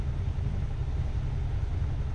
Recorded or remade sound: recorded